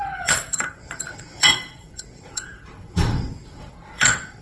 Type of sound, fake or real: fake